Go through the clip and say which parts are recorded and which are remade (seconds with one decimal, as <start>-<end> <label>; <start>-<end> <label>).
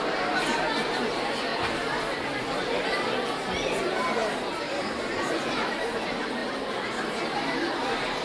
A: 0.0-1.5 recorded; 1.5-2.6 remade; 2.6-8.2 recorded